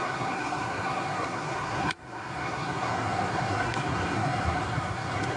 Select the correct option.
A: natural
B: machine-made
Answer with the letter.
B